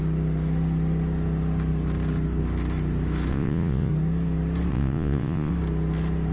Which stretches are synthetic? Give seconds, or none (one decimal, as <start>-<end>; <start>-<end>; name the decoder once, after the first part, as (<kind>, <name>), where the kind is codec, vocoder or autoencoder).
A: 3.3-3.9 (vocoder, Vocos); 4.7-5.5